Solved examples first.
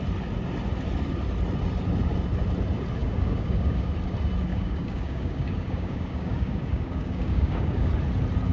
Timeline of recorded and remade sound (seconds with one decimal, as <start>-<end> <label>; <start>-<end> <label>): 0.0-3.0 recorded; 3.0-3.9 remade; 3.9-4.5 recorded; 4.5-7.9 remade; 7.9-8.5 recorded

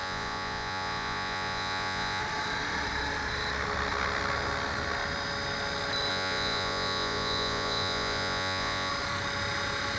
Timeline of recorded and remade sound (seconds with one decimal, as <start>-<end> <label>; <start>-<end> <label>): 0.0-2.2 remade; 2.2-6.1 recorded; 6.1-8.9 remade; 8.9-10.0 recorded

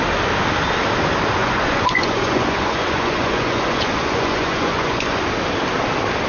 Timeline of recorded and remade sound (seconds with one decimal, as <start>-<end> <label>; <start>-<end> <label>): 0.0-1.4 recorded; 1.4-5.2 remade; 5.2-6.3 recorded

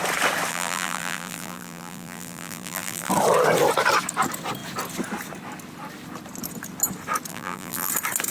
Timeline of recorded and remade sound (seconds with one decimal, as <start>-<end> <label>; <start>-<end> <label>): 0.0-0.5 recorded; 0.5-3.1 remade; 3.1-7.3 recorded; 7.3-7.9 remade; 7.9-8.3 recorded